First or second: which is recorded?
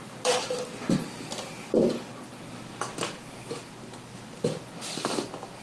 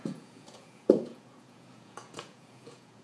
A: first